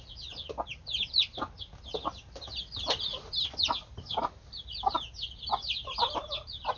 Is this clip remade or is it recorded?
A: recorded